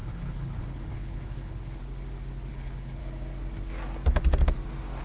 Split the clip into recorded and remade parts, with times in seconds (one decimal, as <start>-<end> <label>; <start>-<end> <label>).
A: 0.0-1.8 remade; 1.8-2.5 recorded; 2.5-3.0 remade; 3.0-5.0 recorded